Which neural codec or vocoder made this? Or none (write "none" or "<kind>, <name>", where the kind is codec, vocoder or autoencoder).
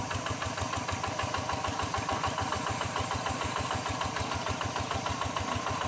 none